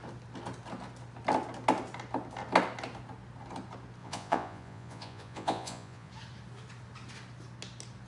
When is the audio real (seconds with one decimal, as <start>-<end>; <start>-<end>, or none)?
0.0-4.0; 6.1-8.1